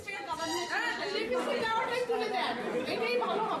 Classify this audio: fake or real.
real